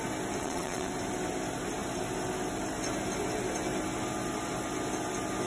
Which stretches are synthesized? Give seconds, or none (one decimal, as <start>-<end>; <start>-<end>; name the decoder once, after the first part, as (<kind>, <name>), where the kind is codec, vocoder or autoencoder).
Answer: 0.4-0.9 (vocoder, WaveNeXt)